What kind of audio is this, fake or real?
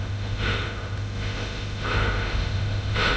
fake